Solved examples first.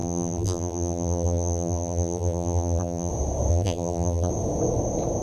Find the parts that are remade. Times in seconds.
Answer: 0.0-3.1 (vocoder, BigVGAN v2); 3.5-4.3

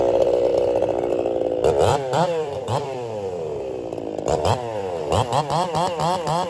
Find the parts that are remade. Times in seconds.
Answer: 0.5-1.1 (vocoder, BigVGAN v2); 1.9-5.0

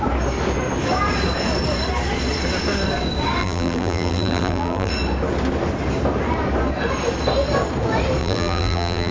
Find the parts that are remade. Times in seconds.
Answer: 3.4-4.9 (vocoder, BigVGAN v2); 8.2-9.1

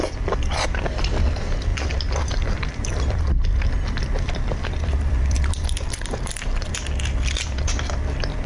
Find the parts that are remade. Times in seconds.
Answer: 1.7-6.7 (vocoder, BigVGAN v2)

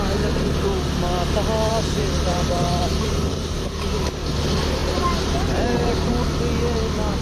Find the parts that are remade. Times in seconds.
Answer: 1.7-4.0 (vocoder, BigVGAN v2); 4.8-6.1

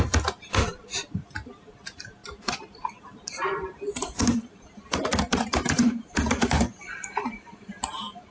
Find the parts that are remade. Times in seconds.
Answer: 0.0-8.3 (vocoder, BigVGAN v2)